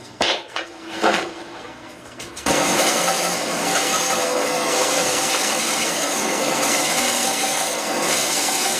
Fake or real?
fake